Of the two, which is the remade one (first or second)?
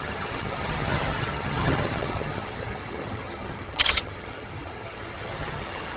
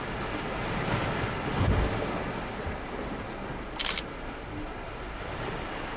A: first